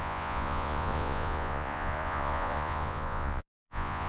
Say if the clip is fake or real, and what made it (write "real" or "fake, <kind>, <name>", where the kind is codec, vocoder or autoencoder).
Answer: fake, vocoder, Vocos